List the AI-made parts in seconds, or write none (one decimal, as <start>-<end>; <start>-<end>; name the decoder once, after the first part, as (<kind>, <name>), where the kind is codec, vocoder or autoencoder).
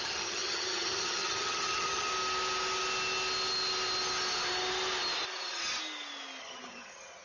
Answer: 0.0-2.1 (vocoder, HiFi-GAN); 6.4-7.2